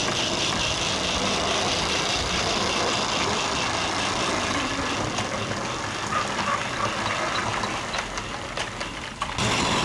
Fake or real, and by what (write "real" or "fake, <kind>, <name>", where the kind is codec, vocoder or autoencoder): real